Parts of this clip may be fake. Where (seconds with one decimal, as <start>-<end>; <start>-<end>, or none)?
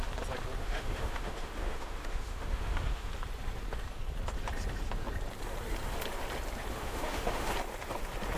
0.6-3.1; 6.7-7.5